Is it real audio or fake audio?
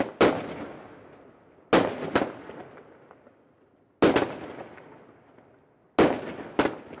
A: real